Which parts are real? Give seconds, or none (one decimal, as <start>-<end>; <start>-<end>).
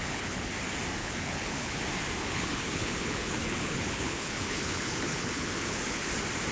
0.5-1.0; 1.8-2.2; 6.1-6.5